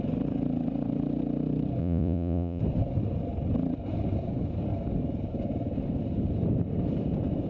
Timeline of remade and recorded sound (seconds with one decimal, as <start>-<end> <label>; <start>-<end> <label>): 0.0-1.8 recorded; 1.8-2.6 remade; 2.6-7.5 recorded